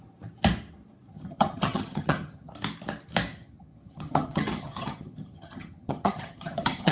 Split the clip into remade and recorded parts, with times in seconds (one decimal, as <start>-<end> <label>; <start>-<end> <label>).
0.0-1.1 recorded; 1.1-2.5 remade; 2.5-3.3 recorded; 3.3-6.9 remade